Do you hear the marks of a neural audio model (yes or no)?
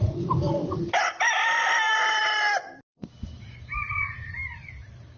yes